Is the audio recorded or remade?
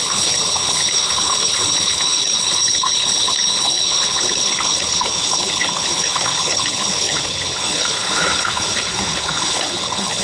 remade